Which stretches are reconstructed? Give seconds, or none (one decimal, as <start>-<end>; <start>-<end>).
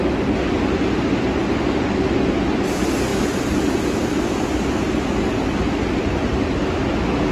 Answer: none